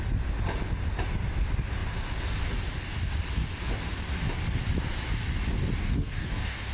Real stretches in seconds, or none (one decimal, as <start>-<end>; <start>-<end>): 0.0-5.8